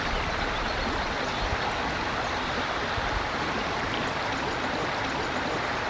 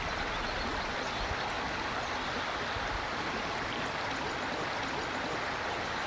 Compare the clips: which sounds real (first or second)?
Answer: second